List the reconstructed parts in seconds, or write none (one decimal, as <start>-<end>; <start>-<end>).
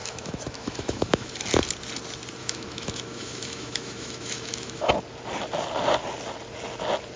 0.0-1.3; 2.4-4.9